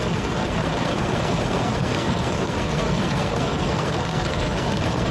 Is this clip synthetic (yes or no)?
yes